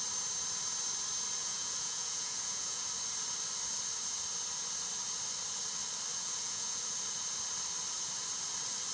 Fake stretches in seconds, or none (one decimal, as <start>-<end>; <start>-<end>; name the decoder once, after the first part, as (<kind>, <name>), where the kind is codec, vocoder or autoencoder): 1.4-2.9 (vocoder, Vocos); 6.1-6.9